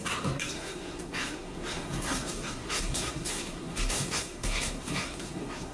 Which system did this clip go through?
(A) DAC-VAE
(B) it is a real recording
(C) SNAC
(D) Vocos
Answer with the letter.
C